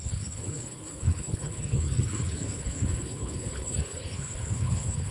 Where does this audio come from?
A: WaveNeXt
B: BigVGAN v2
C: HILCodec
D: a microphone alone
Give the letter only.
C